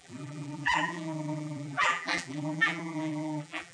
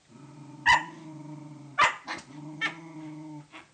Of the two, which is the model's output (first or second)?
first